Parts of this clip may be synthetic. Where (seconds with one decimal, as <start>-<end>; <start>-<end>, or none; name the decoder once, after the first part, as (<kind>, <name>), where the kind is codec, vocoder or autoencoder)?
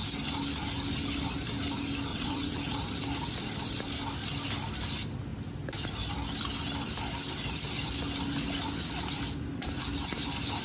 2.1-2.6 (vocoder, WaveNeXt)